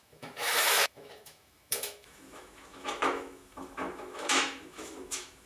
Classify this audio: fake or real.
fake